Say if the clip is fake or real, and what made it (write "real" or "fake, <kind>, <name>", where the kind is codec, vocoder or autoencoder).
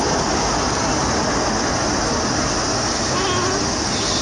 real